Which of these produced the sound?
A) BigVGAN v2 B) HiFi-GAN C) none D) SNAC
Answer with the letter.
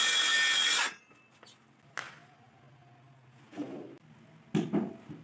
C